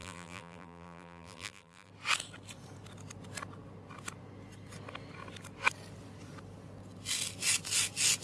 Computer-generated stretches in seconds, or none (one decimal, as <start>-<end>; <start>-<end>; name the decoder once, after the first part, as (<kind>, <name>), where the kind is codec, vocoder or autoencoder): 0.0-1.9 (vocoder, BigVGAN v2)